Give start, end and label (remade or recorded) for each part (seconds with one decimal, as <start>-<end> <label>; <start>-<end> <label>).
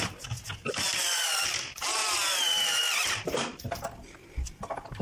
0.0-0.6 recorded; 0.6-1.4 remade; 1.4-2.0 recorded; 2.0-3.6 remade; 3.6-5.0 recorded